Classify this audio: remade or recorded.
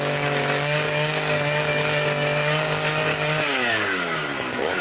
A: remade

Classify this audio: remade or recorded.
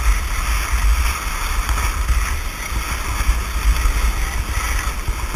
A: recorded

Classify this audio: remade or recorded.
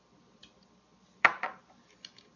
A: recorded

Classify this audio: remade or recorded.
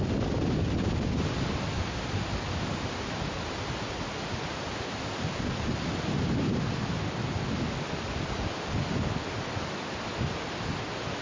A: recorded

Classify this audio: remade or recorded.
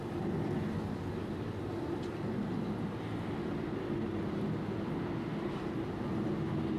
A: recorded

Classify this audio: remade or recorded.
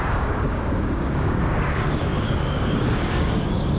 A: remade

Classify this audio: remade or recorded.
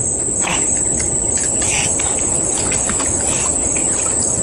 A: recorded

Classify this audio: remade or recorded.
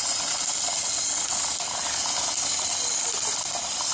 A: recorded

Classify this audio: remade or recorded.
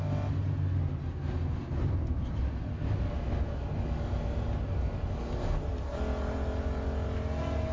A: recorded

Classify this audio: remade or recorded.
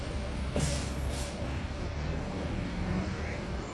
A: remade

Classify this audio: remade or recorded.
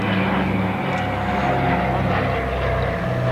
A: recorded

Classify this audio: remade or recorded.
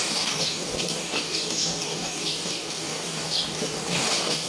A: remade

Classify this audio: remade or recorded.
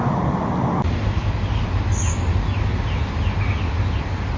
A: recorded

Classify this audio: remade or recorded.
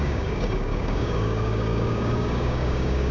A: remade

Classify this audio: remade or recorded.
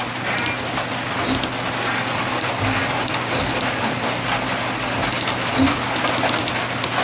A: recorded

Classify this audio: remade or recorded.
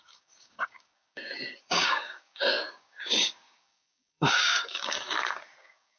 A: remade